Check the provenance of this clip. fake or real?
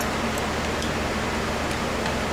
real